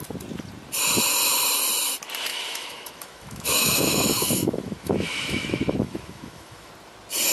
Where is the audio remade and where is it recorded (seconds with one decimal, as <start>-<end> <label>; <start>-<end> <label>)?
0.0-2.3 recorded; 2.3-6.7 remade; 6.7-7.3 recorded